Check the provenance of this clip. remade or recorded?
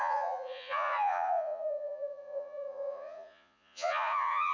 remade